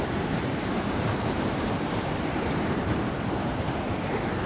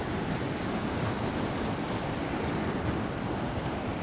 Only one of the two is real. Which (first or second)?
second